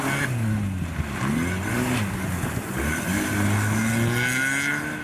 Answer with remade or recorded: recorded